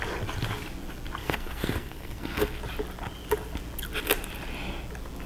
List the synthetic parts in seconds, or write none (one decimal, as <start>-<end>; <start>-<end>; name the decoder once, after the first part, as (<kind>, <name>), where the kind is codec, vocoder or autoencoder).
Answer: 1.2-2.6 (codec, SNAC)